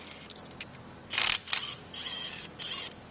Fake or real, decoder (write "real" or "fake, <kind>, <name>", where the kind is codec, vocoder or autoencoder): real